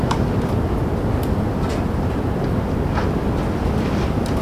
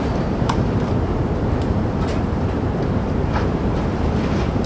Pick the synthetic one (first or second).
second